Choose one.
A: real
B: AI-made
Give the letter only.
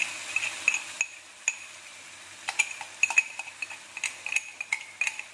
A